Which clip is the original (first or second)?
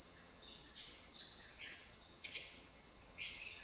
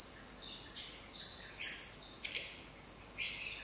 second